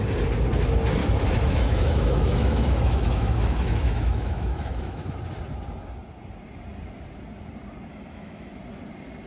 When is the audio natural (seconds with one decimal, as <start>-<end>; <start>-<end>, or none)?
0.0-1.0; 5.2-7.9; 8.5-9.3